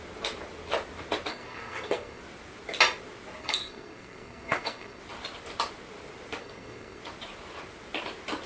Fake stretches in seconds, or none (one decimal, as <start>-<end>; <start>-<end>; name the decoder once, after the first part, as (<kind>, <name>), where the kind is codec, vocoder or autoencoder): 1.3-2.2 (codec, SNAC); 3.4-5.0; 6.4-7.0